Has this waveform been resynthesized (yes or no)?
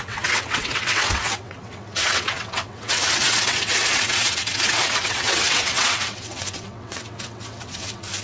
yes